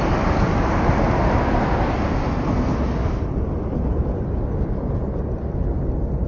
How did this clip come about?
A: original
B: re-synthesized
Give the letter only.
A